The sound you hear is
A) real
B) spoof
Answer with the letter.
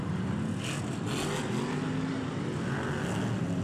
A